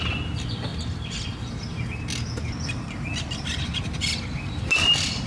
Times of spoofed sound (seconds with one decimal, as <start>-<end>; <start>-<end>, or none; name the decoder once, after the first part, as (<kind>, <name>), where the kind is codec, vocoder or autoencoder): none